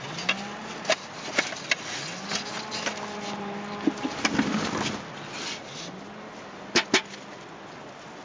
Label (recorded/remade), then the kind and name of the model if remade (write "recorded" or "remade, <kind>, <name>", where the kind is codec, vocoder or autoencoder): recorded